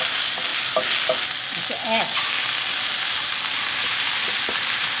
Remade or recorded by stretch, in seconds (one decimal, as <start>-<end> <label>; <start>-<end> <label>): 0.0-5.0 recorded

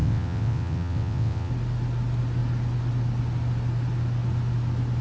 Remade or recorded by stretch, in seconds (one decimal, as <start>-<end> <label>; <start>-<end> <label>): 0.0-1.5 remade; 1.5-5.0 recorded